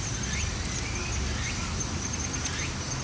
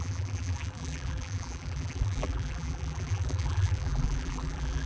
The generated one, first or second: second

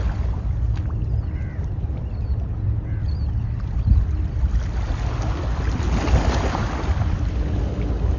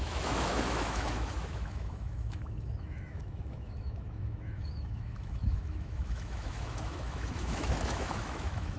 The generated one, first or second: second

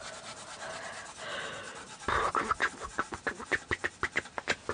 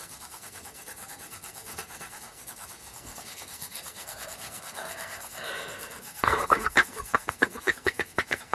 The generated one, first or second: second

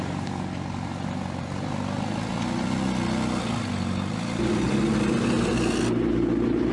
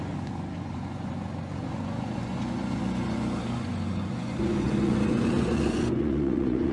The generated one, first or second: second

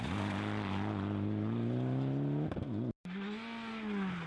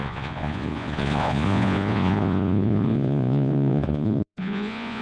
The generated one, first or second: second